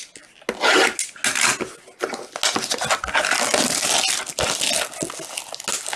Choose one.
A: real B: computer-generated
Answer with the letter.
A